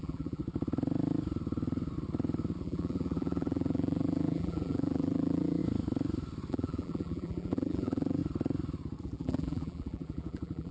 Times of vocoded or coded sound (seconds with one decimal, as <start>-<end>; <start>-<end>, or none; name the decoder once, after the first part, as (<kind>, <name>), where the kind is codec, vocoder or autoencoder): 0.0-0.4 (vocoder, BigVGAN v2); 2.6-5.6; 6.5-8.2; 9.0-10.7